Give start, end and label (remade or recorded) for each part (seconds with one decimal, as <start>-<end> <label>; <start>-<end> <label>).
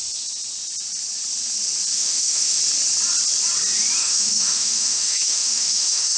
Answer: 0.0-1.9 recorded; 1.9-2.6 remade; 2.6-4.0 recorded; 4.0-6.2 remade